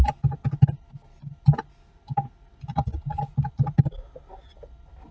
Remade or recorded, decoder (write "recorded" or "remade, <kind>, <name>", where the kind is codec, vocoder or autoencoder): recorded